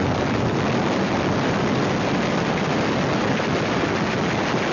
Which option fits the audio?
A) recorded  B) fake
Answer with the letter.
A